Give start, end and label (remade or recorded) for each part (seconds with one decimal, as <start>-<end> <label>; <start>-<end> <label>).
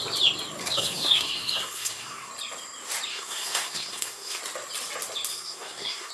0.0-0.6 recorded; 0.6-2.3 remade; 2.3-3.1 recorded; 3.1-4.4 remade; 4.4-5.3 recorded; 5.3-6.1 remade